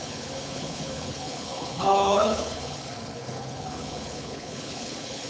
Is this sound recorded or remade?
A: remade